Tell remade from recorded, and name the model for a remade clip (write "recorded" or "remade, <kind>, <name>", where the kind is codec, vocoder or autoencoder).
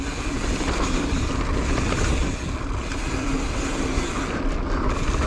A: recorded